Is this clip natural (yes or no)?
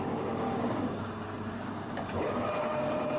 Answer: no